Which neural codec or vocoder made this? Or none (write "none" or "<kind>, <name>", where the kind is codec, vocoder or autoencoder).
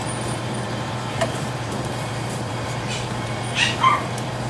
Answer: vocoder, BigVGAN v2